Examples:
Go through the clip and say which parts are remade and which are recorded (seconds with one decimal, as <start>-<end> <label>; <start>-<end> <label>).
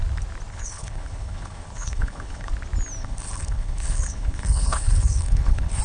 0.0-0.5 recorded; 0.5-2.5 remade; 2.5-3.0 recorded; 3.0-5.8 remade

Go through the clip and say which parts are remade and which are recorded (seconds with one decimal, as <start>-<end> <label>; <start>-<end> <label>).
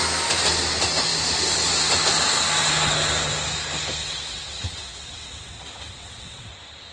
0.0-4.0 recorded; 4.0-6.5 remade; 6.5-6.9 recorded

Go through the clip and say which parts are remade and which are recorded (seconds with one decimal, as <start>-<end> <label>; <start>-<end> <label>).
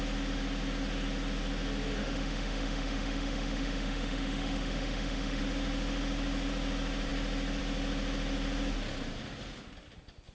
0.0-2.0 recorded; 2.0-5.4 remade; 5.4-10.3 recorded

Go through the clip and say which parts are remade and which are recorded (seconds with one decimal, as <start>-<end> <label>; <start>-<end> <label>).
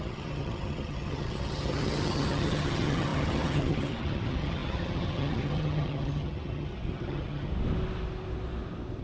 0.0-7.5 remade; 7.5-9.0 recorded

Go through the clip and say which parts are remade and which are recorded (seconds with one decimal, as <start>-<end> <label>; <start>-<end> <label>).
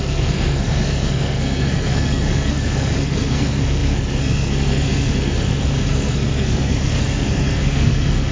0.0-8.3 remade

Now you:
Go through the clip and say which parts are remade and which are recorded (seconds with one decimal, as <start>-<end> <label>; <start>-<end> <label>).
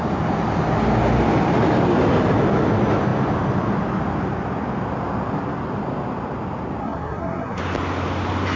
0.0-6.8 recorded; 6.8-7.6 remade; 7.6-8.6 recorded